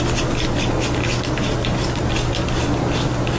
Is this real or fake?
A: real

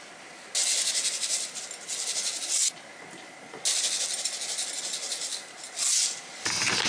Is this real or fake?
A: real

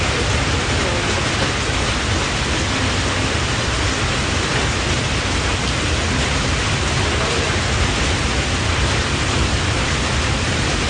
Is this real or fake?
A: real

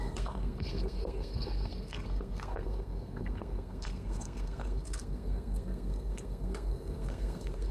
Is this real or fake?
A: fake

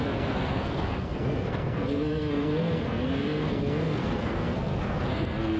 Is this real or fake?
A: fake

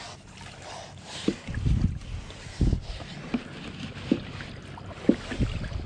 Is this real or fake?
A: real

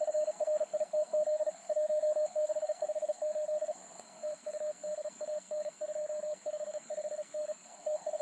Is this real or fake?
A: fake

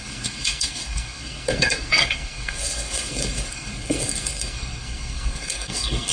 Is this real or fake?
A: fake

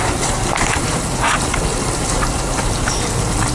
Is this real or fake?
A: real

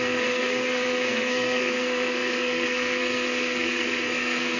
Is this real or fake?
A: fake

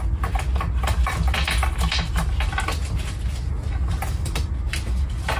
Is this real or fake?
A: real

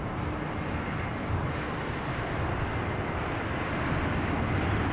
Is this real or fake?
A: real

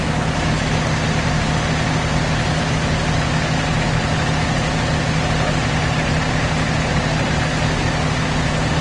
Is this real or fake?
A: real